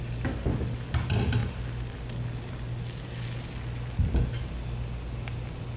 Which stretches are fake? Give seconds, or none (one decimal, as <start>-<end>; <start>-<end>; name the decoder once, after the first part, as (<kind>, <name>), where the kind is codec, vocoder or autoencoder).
none